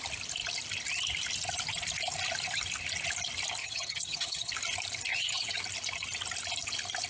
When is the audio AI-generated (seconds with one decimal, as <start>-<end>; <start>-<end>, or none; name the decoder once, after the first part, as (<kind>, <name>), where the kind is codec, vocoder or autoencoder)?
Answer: 3.6-4.5 (vocoder, HiFi-GAN); 5.1-5.6